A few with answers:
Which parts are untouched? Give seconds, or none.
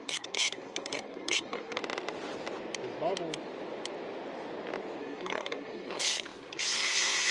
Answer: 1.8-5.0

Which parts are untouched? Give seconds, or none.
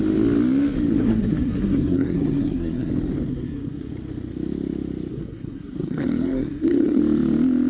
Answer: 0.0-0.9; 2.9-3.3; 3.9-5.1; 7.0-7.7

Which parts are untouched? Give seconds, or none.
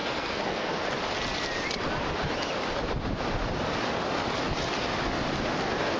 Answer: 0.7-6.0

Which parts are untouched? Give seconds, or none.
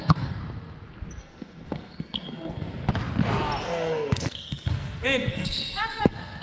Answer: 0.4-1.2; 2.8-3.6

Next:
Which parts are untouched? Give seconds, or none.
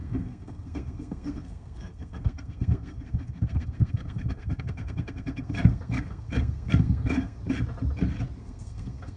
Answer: 7.4-8.4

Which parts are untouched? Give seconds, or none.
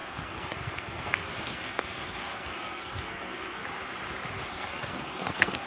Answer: 3.6-4.5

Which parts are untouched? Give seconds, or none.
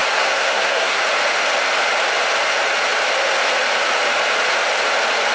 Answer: 1.0-5.3